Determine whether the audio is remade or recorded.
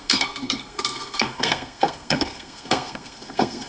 remade